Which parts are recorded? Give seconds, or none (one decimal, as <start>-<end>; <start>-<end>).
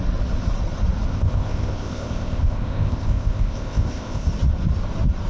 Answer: 0.0-1.1; 4.3-5.3